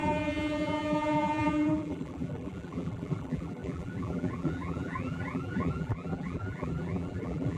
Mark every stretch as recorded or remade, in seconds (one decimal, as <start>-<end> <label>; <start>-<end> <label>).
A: 0.0-7.6 remade